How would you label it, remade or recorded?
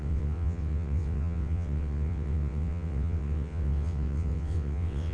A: remade